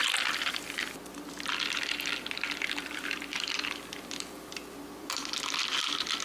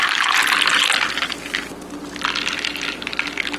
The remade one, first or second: first